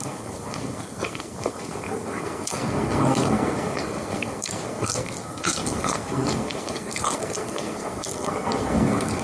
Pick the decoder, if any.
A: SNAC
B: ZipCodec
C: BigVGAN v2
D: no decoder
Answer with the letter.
A